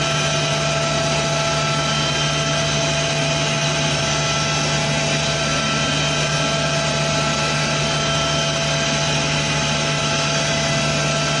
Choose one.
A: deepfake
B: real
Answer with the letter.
B